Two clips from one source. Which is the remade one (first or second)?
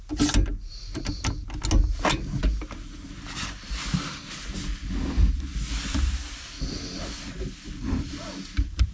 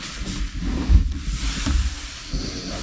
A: second